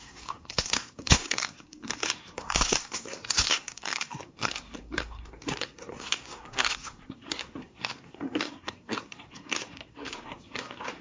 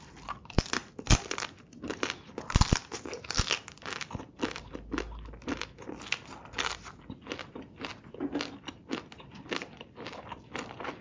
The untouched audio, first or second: second